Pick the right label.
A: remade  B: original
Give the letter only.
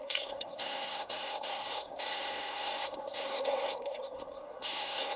A